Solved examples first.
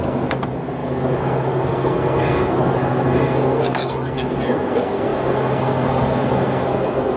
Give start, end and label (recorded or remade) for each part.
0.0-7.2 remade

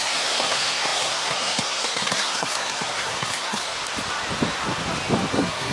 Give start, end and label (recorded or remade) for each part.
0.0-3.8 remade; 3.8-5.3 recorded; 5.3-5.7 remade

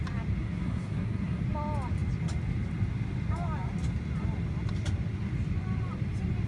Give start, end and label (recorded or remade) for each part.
0.0-0.4 recorded; 0.4-1.4 remade; 1.4-6.5 recorded

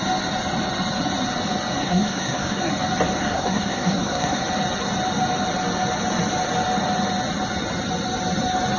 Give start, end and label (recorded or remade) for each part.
0.0-1.8 recorded; 1.8-2.6 remade; 2.6-3.2 recorded; 3.2-4.4 remade; 4.4-8.8 recorded

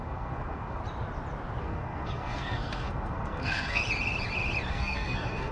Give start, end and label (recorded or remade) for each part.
0.0-0.8 remade; 0.8-1.6 recorded; 1.6-3.8 remade; 3.8-4.7 recorded; 4.7-5.5 remade

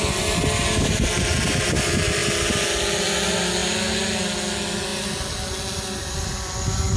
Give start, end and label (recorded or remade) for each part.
0.0-7.0 recorded